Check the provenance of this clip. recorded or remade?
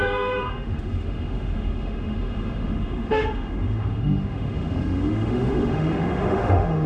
remade